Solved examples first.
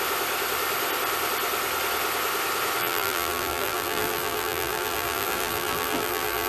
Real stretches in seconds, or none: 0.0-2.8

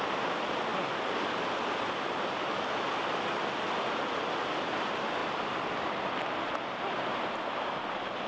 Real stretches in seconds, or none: 0.0-5.2; 6.1-8.3

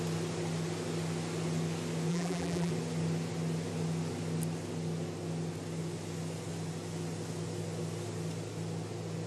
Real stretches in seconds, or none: 0.0-2.1; 2.7-9.3

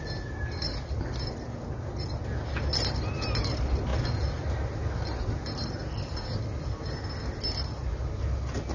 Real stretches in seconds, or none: 0.0-8.7

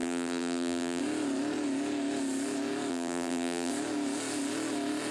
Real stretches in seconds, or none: 1.0-2.9; 3.7-5.1